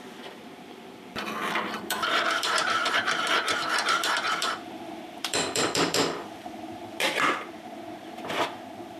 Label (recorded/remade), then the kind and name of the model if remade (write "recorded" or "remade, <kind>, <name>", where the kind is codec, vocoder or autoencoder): remade, vocoder, BigVGAN v2